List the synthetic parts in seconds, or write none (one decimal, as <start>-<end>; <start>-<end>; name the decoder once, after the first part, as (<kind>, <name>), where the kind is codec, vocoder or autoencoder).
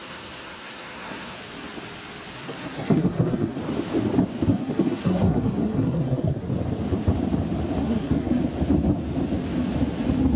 0.0-1.4 (codec, SNAC); 2.3-3.6; 4.5-6.5; 7.8-8.4